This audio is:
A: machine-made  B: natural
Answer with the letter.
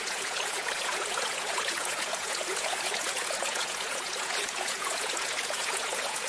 A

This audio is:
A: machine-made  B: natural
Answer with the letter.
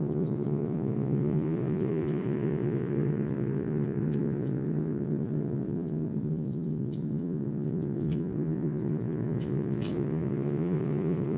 A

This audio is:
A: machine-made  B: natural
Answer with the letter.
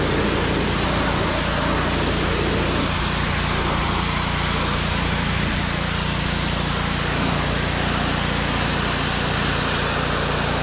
B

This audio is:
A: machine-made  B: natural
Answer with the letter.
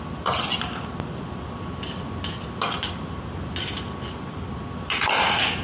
B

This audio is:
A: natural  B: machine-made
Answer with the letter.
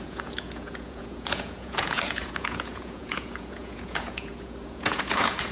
B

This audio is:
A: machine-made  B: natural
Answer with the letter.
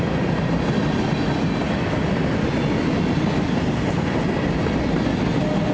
B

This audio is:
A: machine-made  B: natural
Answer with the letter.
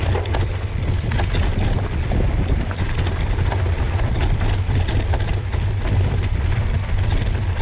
B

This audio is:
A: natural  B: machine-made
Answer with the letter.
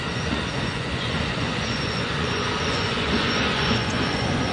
B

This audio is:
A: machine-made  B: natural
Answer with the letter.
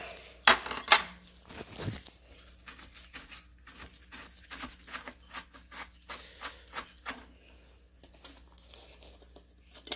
B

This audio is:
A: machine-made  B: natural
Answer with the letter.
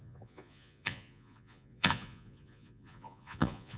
A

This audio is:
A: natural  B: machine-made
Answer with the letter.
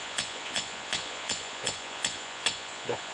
B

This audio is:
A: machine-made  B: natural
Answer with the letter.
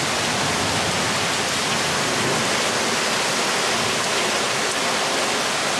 B